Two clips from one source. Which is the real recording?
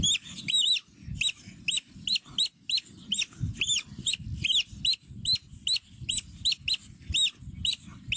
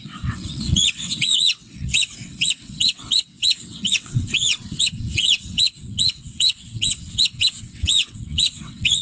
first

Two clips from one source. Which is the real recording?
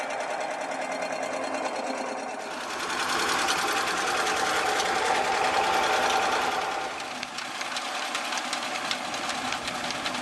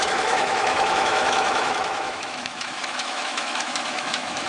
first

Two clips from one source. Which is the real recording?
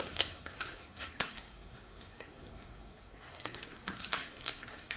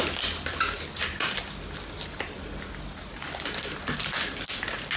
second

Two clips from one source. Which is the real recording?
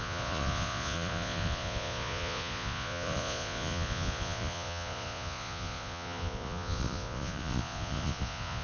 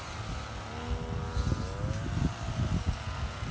second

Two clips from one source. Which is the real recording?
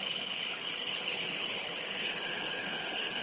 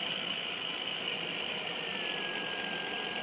second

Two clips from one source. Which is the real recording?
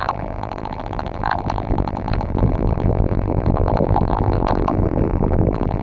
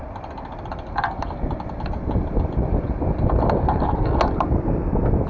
second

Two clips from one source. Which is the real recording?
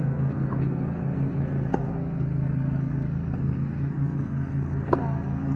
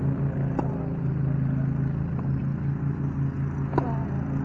second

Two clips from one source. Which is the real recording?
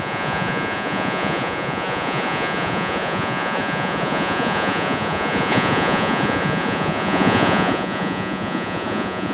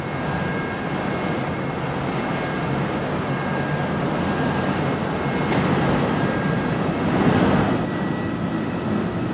second